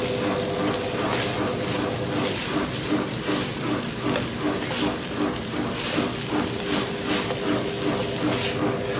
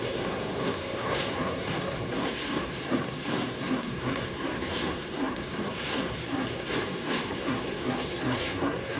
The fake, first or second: second